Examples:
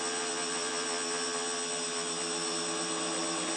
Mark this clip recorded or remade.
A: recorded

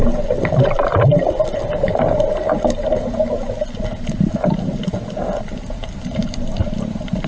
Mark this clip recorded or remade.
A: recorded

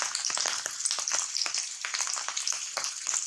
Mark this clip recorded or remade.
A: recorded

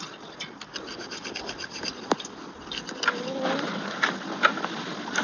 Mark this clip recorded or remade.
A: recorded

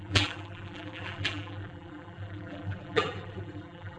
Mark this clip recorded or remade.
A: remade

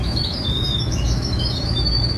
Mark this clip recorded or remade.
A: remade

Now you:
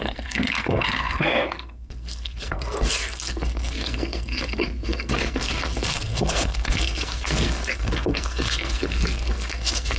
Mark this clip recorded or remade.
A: remade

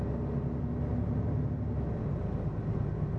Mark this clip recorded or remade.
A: recorded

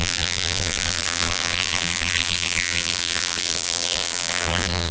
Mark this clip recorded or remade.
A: remade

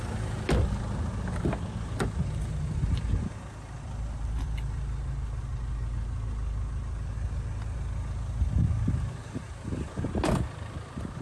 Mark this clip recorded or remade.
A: recorded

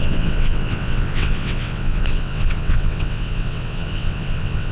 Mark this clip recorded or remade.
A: remade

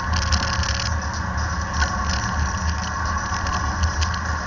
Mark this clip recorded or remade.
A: recorded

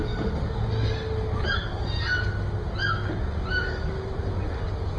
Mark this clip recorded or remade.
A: recorded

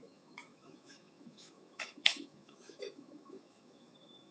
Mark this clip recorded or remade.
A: remade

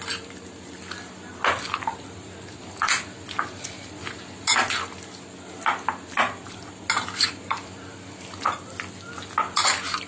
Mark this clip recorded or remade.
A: recorded